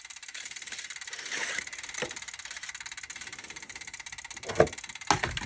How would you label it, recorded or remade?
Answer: recorded